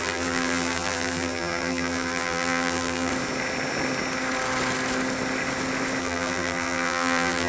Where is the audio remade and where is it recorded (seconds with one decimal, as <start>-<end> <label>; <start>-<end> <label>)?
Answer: 0.0-3.1 remade; 3.1-6.0 recorded; 6.0-7.5 remade